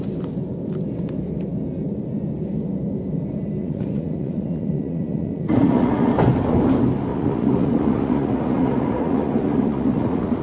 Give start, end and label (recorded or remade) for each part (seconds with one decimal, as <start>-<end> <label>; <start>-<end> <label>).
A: 0.0-3.6 recorded; 3.6-6.1 remade; 6.1-7.1 recorded; 7.1-10.4 remade